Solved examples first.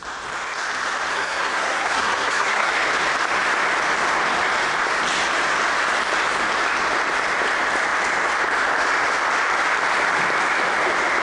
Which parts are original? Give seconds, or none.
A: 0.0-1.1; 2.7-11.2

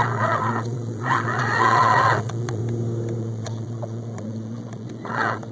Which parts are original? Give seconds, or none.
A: 2.6-3.2

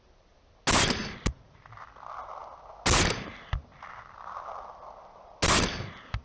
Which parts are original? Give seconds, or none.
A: 0.0-6.2